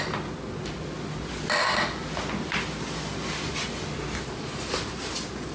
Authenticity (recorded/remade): recorded